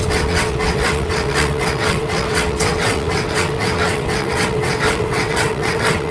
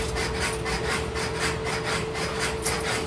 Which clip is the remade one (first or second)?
first